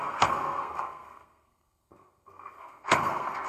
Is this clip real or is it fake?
fake